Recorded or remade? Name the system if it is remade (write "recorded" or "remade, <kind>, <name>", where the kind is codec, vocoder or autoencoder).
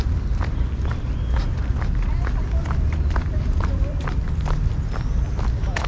recorded